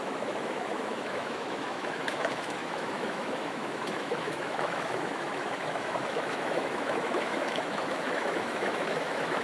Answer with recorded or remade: remade